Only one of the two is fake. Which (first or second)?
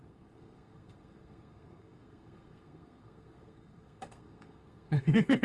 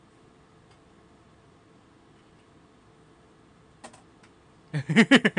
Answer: first